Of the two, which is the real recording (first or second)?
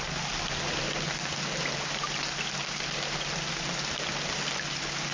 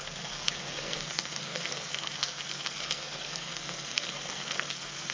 first